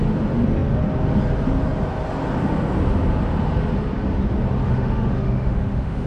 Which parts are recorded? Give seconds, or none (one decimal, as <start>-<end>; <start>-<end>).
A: 0.0-4.6